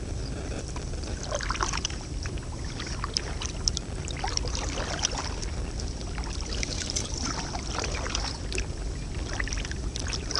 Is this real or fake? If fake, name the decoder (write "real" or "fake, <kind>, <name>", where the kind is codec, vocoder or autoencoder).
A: fake, vocoder, BigVGAN v2